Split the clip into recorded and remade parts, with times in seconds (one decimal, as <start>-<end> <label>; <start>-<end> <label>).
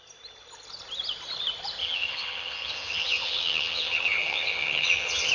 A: 0.0-1.8 recorded; 1.8-5.3 remade